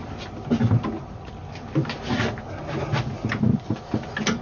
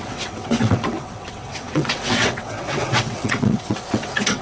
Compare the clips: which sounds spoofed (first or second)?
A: second